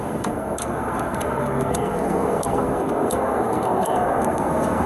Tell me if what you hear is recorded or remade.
remade